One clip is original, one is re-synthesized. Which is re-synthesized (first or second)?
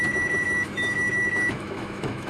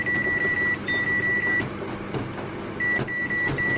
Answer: first